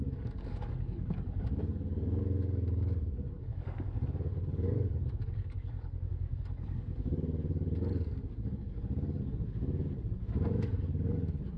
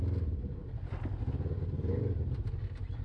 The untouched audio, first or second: second